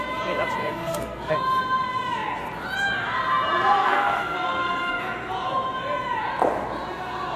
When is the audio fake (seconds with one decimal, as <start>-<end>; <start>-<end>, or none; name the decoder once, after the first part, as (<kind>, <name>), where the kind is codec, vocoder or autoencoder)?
0.6-1.3 (codec, SNAC); 3.8-5.0